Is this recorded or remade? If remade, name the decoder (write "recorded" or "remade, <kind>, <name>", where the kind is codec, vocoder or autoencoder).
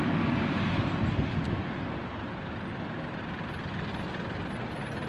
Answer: recorded